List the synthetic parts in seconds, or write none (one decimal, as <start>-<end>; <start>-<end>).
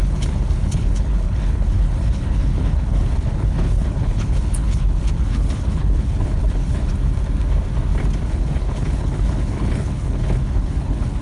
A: 0.0-6.9; 8.3-11.2